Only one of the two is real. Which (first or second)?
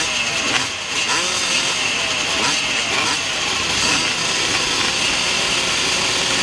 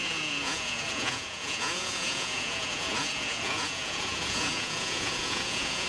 first